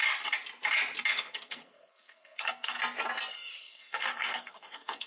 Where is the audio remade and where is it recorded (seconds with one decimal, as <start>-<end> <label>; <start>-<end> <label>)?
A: 0.0-1.1 recorded; 1.1-2.8 remade; 2.8-3.6 recorded; 3.6-5.1 remade